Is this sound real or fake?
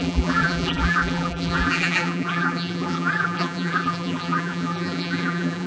fake